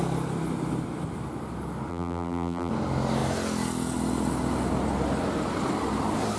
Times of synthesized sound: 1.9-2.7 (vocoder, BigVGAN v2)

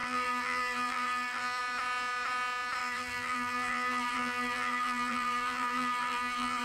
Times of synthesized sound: 0.0-1.6 (vocoder, BigVGAN v2); 2.8-6.6

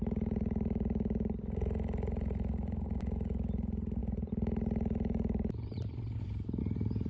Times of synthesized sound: 0.0-7.1 (vocoder, BigVGAN v2)

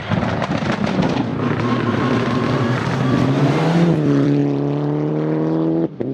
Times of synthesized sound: 0.0-1.3 (vocoder, BigVGAN v2); 1.9-6.1